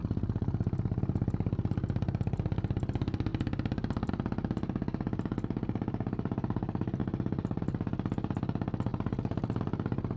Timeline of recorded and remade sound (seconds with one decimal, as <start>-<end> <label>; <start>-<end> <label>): 0.0-1.0 remade; 1.0-8.9 recorded; 8.9-9.6 remade; 9.6-10.2 recorded